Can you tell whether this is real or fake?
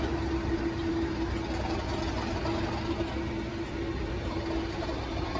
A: real